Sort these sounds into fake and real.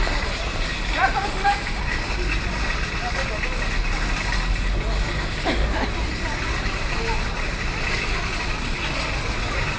real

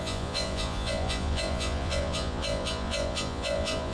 fake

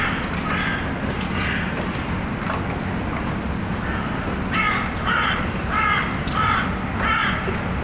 real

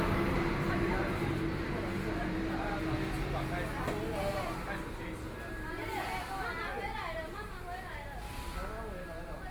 real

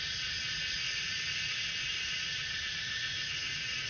fake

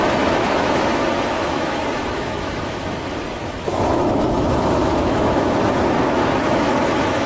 fake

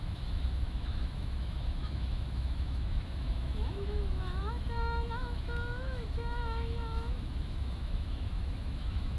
fake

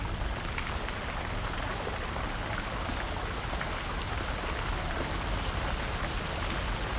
real